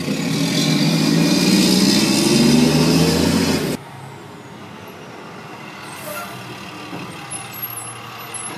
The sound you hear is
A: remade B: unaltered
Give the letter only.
B